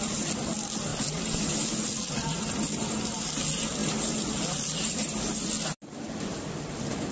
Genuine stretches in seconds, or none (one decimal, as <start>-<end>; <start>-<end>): 0.0-7.1